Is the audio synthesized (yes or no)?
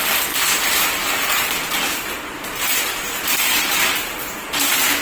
no